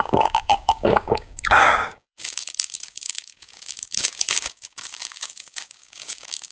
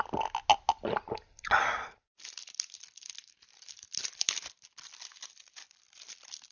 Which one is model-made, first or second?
first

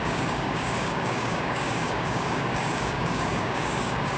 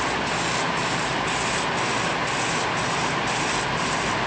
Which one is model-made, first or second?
first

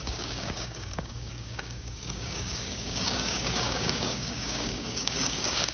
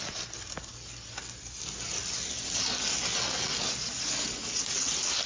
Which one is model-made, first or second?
first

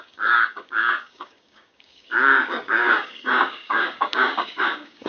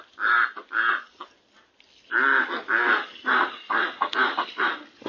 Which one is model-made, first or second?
first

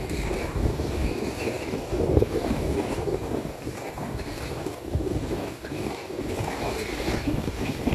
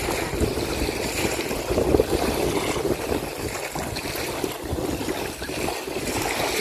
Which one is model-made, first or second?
first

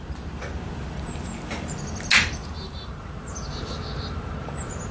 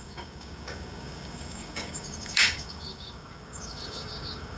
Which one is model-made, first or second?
second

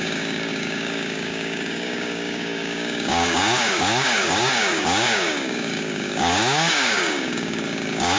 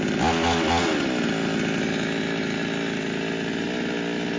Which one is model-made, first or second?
first